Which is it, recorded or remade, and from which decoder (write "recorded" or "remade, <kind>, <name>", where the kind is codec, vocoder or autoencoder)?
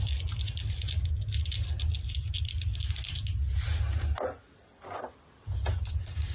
recorded